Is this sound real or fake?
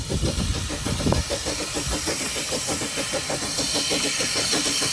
fake